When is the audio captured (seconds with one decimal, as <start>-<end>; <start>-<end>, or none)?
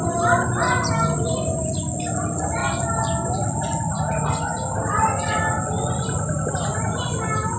0.0-7.6